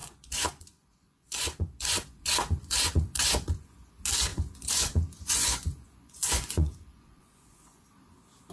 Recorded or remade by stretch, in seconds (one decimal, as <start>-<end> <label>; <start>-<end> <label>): 0.0-3.9 remade; 3.9-4.3 recorded; 4.3-7.8 remade; 7.8-8.5 recorded

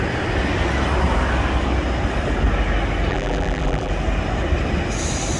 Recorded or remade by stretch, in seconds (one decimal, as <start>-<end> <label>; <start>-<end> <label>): 0.0-3.1 recorded; 3.1-3.9 remade; 3.9-5.4 recorded

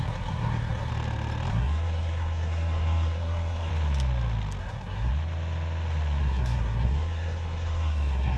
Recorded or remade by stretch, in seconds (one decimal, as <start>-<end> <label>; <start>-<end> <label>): 0.0-0.9 remade; 0.9-1.5 recorded; 1.5-3.7 remade; 3.7-4.6 recorded; 4.6-5.1 remade; 5.1-6.2 recorded; 6.2-8.4 remade

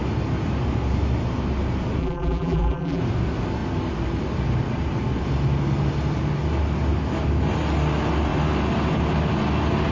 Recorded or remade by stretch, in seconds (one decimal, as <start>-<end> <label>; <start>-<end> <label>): 0.0-2.0 recorded; 2.0-3.0 remade; 3.0-9.9 recorded

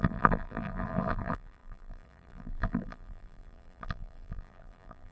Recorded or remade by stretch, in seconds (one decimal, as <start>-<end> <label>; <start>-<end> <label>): 0.0-5.1 remade

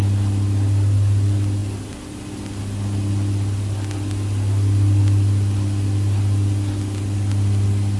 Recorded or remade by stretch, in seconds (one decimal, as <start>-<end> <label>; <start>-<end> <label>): 0.0-8.0 recorded

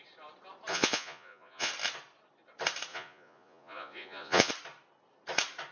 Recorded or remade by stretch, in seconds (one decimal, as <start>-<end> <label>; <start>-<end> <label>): 0.0-0.7 recorded; 0.7-1.7 remade; 1.7-2.9 recorded; 2.9-4.5 remade; 4.5-5.7 recorded